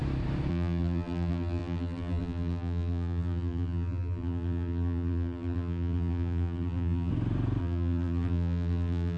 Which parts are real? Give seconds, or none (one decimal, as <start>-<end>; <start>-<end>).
0.0-0.5; 7.1-7.6